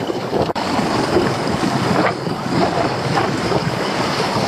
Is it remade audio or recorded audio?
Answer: remade